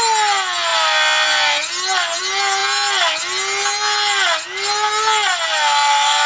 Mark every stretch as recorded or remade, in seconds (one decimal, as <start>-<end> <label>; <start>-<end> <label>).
0.0-6.3 recorded